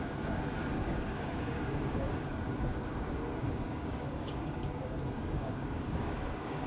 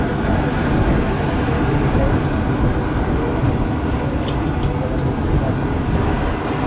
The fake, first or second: first